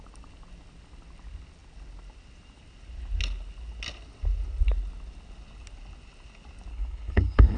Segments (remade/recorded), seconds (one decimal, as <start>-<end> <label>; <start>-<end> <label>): 0.0-6.7 recorded; 6.7-7.6 remade